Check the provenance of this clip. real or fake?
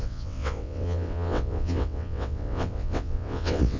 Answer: fake